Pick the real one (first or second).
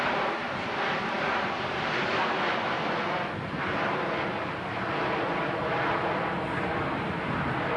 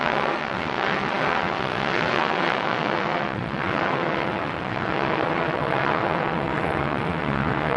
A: first